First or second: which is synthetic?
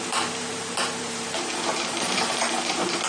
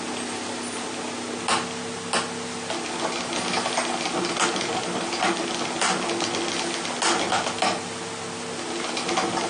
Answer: first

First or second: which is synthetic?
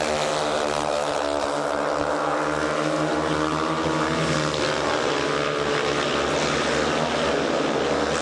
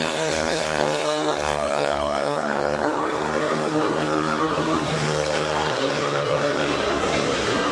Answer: second